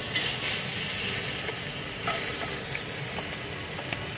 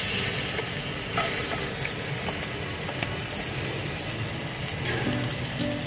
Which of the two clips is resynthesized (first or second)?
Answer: first